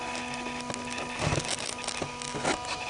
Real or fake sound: real